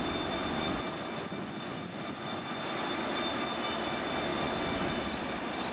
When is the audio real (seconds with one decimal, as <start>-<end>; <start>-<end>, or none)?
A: 0.0-0.4; 2.6-4.3; 4.9-5.7